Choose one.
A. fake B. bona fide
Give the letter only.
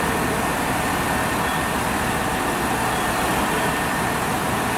B